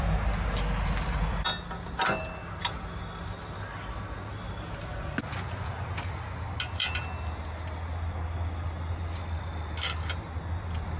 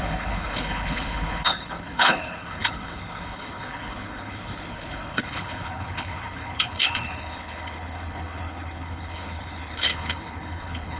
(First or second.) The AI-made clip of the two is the second